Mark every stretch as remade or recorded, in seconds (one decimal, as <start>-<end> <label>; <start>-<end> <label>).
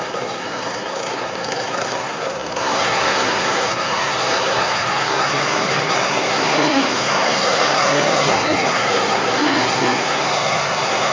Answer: 0.0-11.1 remade